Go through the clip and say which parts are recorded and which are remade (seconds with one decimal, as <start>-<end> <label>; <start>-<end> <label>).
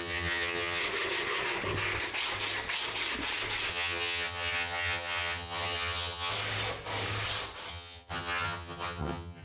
0.0-0.8 remade; 0.8-3.7 recorded; 3.7-6.3 remade; 6.3-7.7 recorded; 7.7-9.4 remade